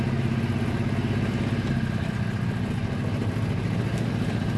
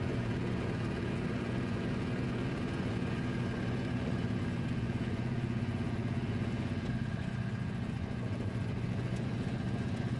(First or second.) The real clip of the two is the first